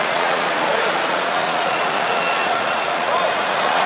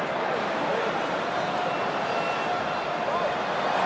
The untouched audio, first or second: second